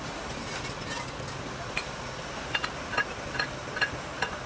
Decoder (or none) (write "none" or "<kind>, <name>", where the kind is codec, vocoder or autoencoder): none